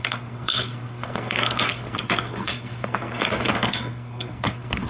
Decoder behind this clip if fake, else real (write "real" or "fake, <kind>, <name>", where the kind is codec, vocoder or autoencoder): fake, codec, SNAC